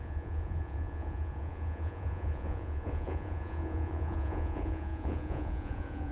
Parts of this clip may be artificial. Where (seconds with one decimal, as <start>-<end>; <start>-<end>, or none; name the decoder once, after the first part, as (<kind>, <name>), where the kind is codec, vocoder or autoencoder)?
0.0-6.1 (vocoder, Vocos)